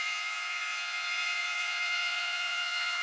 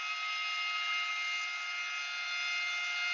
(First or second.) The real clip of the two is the second